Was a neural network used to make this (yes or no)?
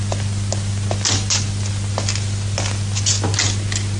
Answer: no